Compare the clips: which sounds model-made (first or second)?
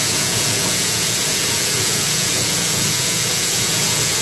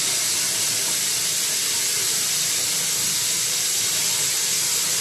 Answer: first